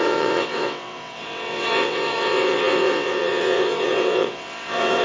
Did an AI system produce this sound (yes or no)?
yes